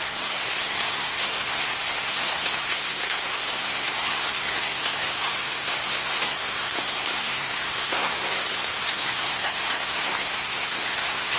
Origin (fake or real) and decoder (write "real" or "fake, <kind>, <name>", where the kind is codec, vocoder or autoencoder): fake, codec, SNAC